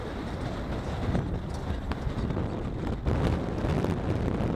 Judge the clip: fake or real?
real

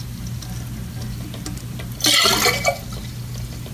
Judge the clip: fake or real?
real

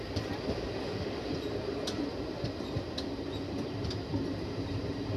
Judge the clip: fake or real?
real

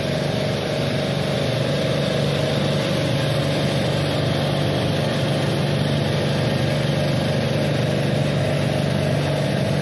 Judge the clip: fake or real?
real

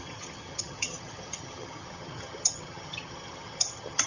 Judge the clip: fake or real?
fake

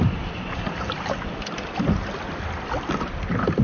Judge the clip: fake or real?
real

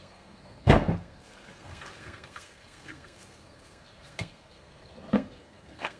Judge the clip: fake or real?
fake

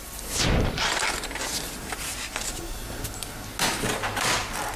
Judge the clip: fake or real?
real